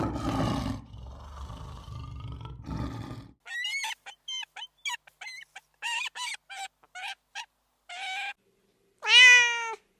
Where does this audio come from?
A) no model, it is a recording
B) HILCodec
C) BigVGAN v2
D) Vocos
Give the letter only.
A